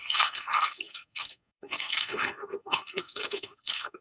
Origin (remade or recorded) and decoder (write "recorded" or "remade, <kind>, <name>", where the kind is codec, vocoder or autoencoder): remade, codec, SNAC